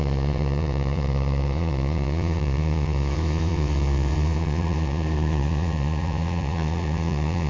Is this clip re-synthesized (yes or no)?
yes